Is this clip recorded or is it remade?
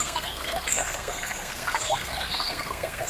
remade